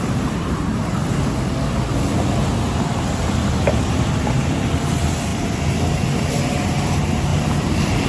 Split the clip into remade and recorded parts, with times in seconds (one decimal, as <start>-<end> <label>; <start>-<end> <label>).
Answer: 0.0-1.0 remade; 1.0-3.8 recorded; 3.8-8.1 remade